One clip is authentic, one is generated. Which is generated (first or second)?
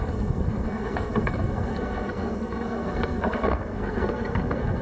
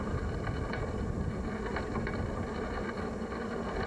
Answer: first